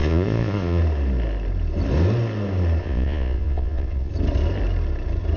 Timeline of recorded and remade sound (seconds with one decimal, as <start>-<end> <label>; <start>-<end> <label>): 0.0-0.8 remade; 0.8-2.8 recorded; 2.8-4.1 remade; 4.1-5.4 recorded